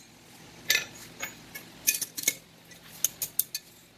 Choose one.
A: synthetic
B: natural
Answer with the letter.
B